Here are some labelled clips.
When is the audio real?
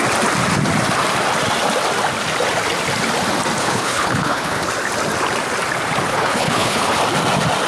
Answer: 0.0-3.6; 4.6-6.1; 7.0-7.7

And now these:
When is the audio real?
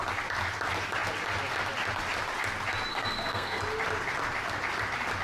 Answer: 0.0-2.9; 3.6-5.2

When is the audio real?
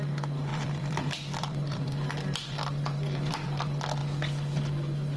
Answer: 0.0-0.5; 3.6-5.2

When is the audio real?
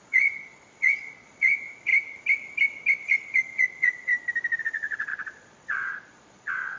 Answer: 1.9-3.0; 4.1-4.6